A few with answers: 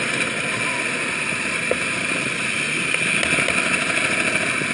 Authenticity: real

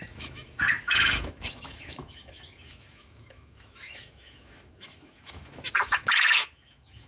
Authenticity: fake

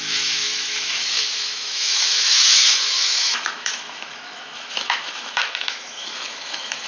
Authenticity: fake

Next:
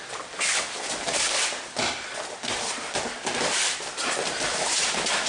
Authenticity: real